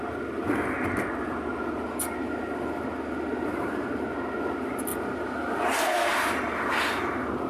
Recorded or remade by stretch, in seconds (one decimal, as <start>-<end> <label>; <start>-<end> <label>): 0.0-7.5 recorded